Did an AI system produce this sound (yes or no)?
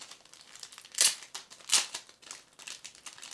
no